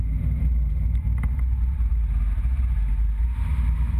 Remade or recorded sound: remade